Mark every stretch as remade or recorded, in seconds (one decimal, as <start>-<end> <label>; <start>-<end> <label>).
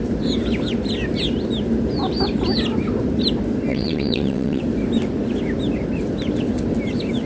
0.0-3.7 recorded; 3.7-4.6 remade; 4.6-7.3 recorded